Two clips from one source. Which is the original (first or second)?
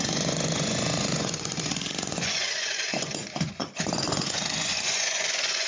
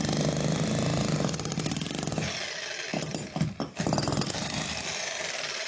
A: second